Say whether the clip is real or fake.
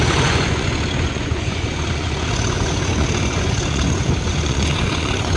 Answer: fake